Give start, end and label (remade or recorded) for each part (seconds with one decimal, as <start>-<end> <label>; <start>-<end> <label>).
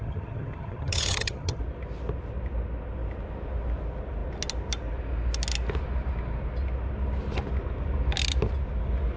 0.0-1.6 remade; 1.6-9.2 recorded